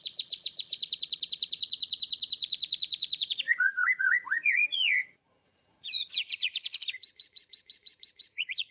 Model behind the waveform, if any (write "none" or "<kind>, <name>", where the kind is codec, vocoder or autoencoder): vocoder, Vocos